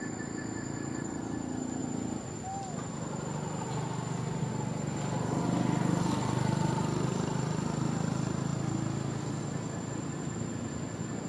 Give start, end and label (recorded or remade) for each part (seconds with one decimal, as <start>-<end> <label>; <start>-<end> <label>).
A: 0.0-11.3 recorded

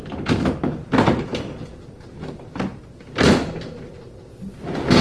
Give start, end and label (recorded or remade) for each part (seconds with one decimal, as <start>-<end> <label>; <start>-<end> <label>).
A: 0.0-5.0 recorded

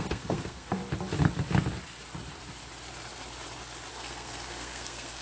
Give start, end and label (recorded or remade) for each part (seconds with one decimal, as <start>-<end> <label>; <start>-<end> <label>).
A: 0.0-0.8 remade; 0.8-3.9 recorded; 3.9-5.2 remade

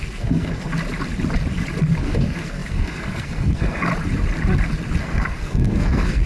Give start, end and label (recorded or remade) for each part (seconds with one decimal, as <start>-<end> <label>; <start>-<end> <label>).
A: 0.0-0.7 remade; 0.7-2.0 recorded; 2.0-3.9 remade; 3.9-5.0 recorded; 5.0-6.3 remade

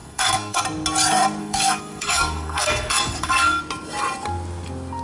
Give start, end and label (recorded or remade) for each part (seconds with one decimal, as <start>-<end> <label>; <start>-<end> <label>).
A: 0.0-0.6 remade; 0.6-1.4 recorded; 1.4-3.6 remade; 3.6-5.0 recorded

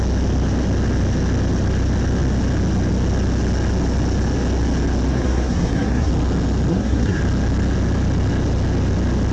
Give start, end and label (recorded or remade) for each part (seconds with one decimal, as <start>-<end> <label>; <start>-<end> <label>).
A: 0.0-5.1 recorded; 5.1-6.1 remade; 6.1-6.7 recorded; 6.7-7.2 remade; 7.2-9.3 recorded

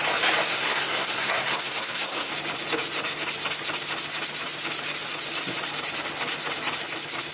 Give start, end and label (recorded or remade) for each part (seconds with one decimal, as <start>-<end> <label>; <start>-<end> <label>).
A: 0.0-0.5 recorded; 0.5-2.3 remade; 2.3-7.3 recorded